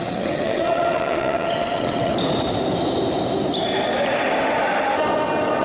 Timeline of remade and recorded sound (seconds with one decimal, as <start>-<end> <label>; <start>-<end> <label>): 0.0-2.1 remade; 2.1-5.6 recorded